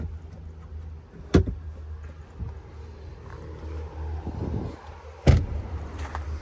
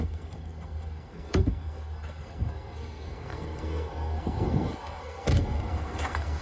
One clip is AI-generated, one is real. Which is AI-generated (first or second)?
second